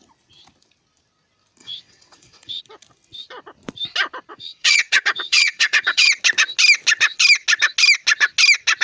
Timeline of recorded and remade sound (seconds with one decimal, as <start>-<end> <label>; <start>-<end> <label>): 0.0-1.6 recorded; 1.6-2.6 remade; 2.6-4.3 recorded; 4.3-6.1 remade; 6.1-8.8 recorded

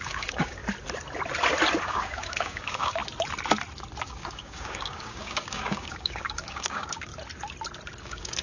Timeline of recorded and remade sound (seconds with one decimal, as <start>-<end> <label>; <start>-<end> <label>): 0.0-0.6 remade; 0.6-1.8 recorded; 1.8-3.0 remade; 3.0-4.0 recorded; 4.0-7.1 remade; 7.1-8.0 recorded; 8.0-8.4 remade

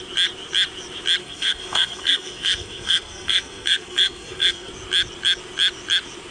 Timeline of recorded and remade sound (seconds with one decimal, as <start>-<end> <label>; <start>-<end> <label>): 0.0-1.2 recorded; 1.2-4.7 remade; 4.7-6.3 recorded

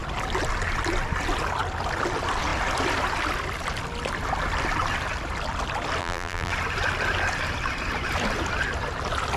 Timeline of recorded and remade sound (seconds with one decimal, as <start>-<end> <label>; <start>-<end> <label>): 0.0-6.0 recorded; 6.0-6.5 remade; 6.5-9.4 recorded

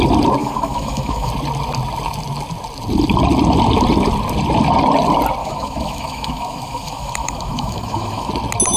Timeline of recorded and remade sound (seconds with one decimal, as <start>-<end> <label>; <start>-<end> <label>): 0.0-0.4 recorded; 0.4-1.3 remade; 1.3-5.4 recorded; 5.4-8.3 remade; 8.3-8.8 recorded